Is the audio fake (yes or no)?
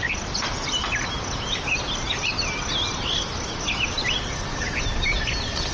no